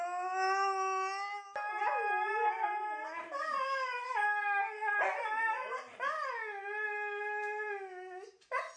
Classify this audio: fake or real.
real